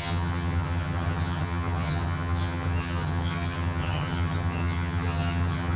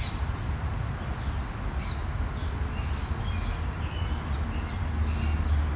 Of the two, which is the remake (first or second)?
first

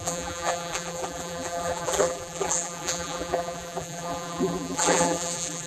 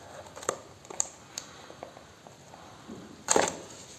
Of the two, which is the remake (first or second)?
first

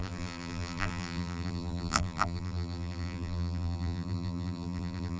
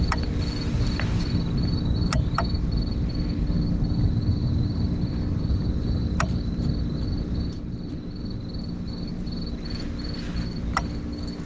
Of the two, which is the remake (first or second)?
first